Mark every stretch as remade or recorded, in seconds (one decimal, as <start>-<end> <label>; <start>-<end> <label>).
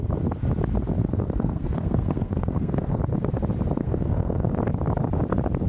0.0-1.0 recorded; 1.0-3.0 remade; 3.0-3.8 recorded; 3.8-4.5 remade; 4.5-5.7 recorded